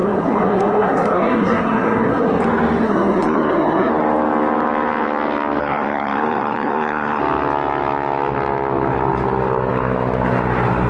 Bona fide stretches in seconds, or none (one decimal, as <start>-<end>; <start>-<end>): 2.4-2.8; 3.9-5.6; 7.2-10.9